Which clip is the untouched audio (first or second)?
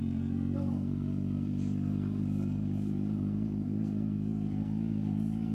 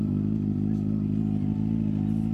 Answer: second